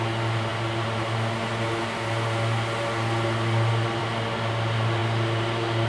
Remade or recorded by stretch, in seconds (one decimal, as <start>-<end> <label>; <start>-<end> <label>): 0.0-5.9 recorded